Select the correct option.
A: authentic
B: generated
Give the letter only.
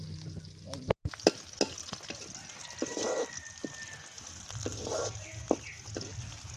A